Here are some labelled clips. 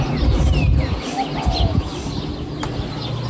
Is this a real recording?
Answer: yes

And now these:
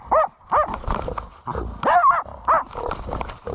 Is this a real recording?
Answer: yes